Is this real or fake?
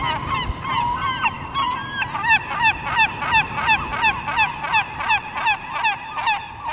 real